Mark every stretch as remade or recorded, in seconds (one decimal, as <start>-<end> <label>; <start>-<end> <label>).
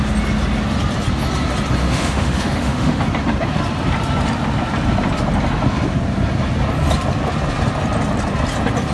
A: 0.0-1.8 recorded; 1.8-3.0 remade; 3.0-8.9 recorded